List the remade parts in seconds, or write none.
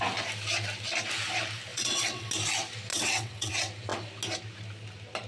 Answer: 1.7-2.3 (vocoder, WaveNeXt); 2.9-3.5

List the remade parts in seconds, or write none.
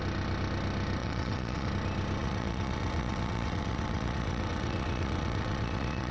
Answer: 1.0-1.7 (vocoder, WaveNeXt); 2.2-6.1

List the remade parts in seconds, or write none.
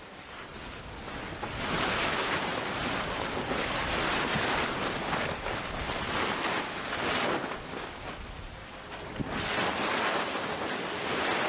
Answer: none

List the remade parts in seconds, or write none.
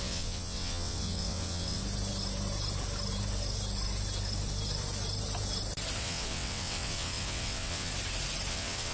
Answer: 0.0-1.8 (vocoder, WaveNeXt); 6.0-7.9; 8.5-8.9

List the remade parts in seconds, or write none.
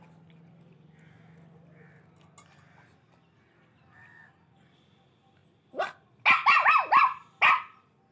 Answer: none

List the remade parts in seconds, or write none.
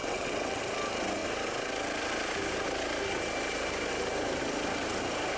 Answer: 0.0-0.6 (vocoder, WaveNeXt)